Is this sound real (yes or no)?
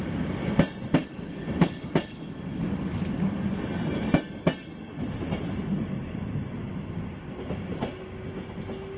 yes